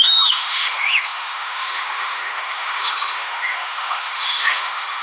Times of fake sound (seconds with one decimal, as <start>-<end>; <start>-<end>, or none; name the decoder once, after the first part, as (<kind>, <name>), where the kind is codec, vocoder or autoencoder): 0.0-5.0 (autoencoder, DAC-VAE)